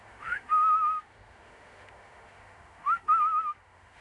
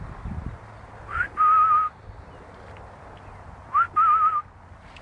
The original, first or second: second